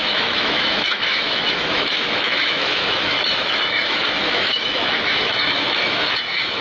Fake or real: fake